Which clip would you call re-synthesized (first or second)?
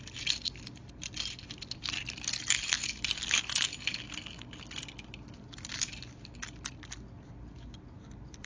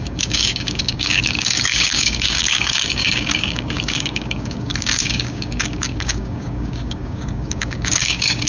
second